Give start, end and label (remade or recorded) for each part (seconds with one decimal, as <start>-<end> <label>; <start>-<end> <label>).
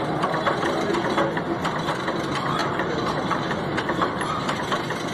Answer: 0.0-2.6 recorded; 2.6-4.6 remade; 4.6-5.1 recorded